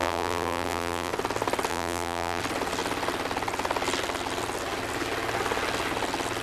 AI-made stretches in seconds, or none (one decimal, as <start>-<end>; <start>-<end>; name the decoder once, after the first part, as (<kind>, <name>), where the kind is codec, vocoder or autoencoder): 0.0-1.1 (vocoder, BigVGAN v2); 1.7-2.4